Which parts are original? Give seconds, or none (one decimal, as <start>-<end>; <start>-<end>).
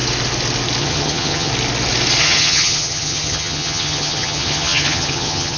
0.0-0.8; 1.5-2.2